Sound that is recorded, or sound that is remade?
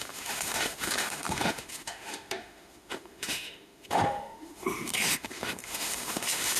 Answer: remade